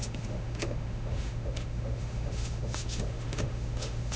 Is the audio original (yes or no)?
no